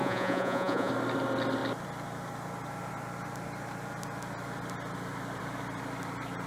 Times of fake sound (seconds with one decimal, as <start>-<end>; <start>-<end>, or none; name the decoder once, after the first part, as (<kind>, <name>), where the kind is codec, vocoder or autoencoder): 0.0-0.9 (vocoder, Vocos)